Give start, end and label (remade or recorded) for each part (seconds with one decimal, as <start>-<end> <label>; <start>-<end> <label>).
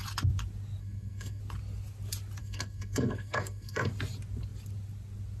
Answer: 0.0-0.8 recorded; 0.8-1.4 remade; 1.4-2.4 recorded; 2.4-3.9 remade; 3.9-5.4 recorded